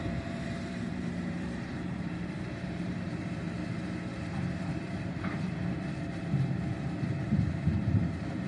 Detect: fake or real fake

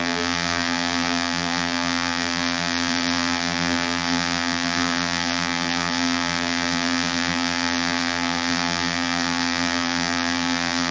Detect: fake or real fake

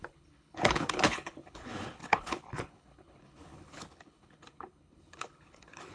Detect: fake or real fake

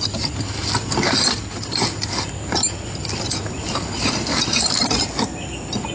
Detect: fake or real real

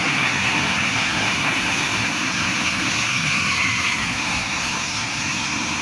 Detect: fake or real fake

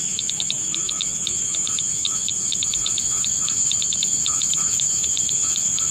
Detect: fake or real fake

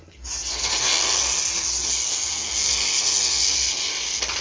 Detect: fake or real real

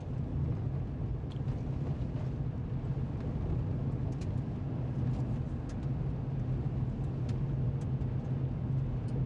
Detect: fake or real real